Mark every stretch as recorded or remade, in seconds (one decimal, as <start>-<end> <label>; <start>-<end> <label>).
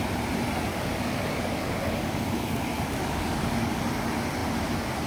0.0-0.7 recorded; 0.7-3.8 remade; 3.8-5.1 recorded